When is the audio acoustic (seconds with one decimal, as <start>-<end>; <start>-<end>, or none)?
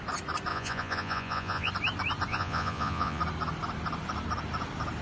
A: 0.0-0.5; 1.7-2.3; 3.2-5.0